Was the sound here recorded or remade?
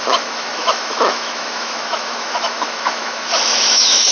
remade